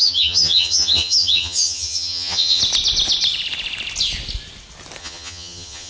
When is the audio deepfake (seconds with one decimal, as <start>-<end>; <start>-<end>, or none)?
0.0-2.6; 5.0-5.9